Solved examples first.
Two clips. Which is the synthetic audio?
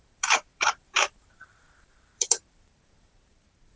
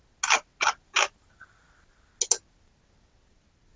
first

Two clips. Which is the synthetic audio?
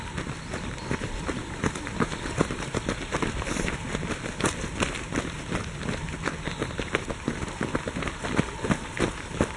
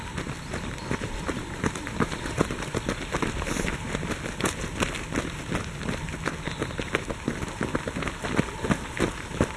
first